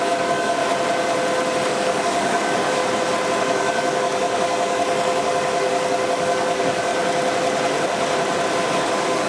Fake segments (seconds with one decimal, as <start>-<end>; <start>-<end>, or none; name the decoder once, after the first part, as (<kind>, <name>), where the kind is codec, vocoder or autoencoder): 0.0-0.6 (codec, DAC); 1.7-2.8; 3.4-6.9; 8.7-9.3